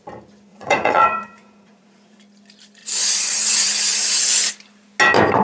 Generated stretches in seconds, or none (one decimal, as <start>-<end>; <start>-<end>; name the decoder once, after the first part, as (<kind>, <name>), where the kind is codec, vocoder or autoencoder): 0.5-2.2 (vocoder, Vocos); 2.8-4.2